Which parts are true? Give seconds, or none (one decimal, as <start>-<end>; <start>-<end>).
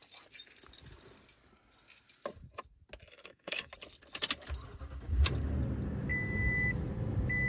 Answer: 0.0-3.1; 3.7-7.5